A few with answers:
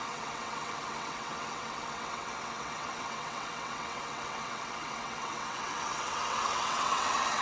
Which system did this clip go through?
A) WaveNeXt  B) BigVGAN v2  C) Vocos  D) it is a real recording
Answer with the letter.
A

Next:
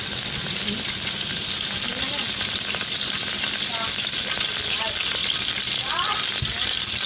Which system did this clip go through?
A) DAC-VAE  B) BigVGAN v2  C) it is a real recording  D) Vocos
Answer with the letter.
C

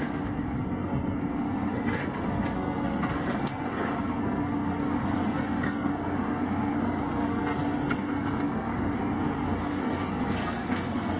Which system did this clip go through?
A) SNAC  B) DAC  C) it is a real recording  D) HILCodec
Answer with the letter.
A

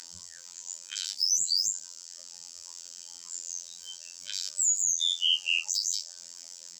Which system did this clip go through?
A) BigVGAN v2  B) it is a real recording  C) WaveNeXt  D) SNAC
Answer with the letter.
A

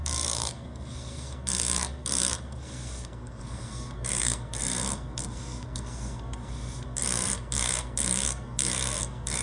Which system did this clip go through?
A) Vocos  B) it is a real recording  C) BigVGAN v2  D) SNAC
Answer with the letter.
D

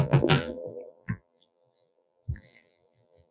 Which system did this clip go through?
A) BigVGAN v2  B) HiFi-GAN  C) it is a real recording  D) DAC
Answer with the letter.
A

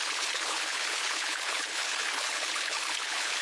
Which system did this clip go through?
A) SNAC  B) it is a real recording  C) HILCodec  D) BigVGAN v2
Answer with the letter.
C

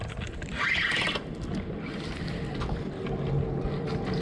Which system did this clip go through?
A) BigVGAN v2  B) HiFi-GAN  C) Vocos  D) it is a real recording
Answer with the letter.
D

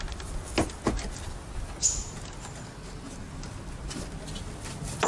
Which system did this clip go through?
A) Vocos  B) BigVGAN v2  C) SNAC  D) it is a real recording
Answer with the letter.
D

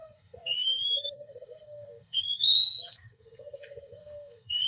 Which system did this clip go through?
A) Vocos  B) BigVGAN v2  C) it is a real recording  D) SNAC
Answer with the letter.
D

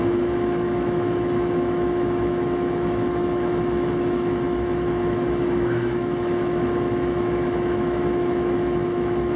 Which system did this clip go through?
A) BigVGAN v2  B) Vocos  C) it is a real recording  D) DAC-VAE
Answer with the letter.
D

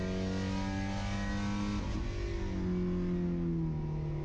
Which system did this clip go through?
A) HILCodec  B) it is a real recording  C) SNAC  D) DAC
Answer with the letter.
B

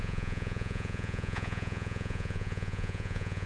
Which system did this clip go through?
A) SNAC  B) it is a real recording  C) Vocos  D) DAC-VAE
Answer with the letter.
C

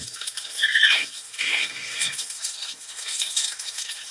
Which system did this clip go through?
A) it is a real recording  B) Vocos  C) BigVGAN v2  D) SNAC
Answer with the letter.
D